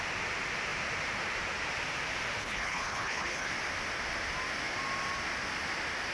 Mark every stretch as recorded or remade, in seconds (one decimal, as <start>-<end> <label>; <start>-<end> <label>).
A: 0.0-2.4 recorded; 2.4-3.5 remade; 3.5-6.1 recorded

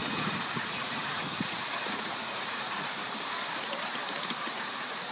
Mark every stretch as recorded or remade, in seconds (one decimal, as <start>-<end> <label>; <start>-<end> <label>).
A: 0.0-3.1 remade; 3.1-5.1 recorded

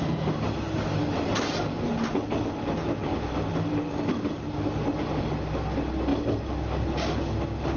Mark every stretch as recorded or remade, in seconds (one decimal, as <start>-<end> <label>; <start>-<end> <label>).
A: 0.0-7.8 recorded

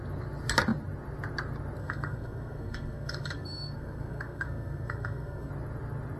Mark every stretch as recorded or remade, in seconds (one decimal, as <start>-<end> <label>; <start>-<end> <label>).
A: 0.0-1.8 recorded; 1.8-5.5 remade; 5.5-6.2 recorded